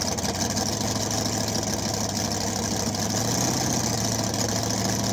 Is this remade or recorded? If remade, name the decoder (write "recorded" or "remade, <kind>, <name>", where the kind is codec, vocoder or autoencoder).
recorded